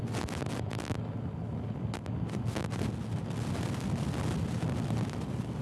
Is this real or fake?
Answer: real